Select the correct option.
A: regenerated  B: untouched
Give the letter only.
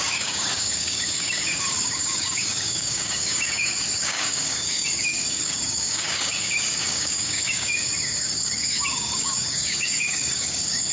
A